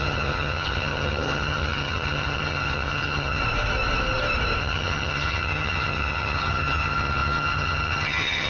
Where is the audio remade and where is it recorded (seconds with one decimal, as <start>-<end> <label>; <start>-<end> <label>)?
0.0-3.4 remade; 3.4-4.6 recorded; 4.6-8.5 remade